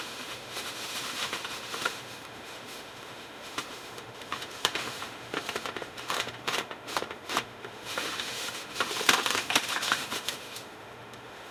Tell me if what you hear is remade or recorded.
remade